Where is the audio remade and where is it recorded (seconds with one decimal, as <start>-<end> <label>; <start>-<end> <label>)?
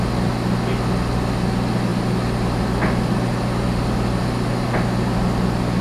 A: 0.0-5.8 recorded